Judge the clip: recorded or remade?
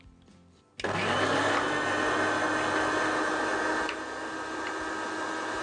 recorded